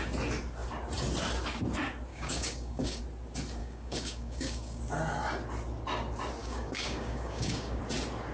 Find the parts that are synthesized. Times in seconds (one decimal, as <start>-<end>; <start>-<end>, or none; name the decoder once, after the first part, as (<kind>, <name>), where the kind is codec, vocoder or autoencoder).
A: 2.1-3.0 (codec, DAC); 3.6-4.8; 6.4-7.8